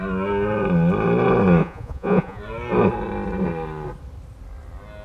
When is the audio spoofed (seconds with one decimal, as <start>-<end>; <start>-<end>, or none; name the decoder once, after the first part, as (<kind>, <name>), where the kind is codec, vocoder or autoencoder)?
1.6-2.4 (vocoder, Vocos)